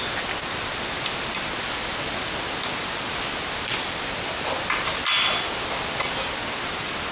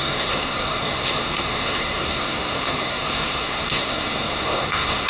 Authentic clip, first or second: first